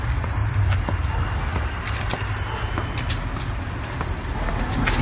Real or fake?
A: real